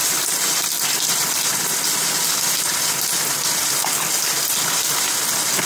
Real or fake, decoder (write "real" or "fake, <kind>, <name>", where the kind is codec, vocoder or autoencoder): real